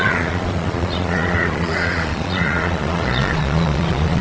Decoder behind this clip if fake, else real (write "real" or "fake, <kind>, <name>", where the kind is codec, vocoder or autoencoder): fake, vocoder, Vocos